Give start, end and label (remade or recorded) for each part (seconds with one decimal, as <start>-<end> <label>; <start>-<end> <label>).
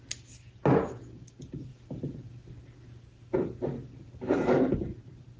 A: 0.0-5.4 recorded